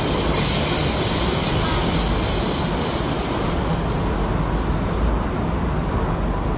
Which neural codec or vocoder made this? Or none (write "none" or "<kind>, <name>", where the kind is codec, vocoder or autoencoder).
none